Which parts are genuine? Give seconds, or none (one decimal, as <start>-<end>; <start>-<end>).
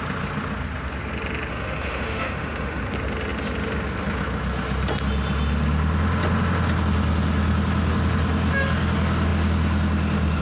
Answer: 0.0-1.5; 2.8-10.4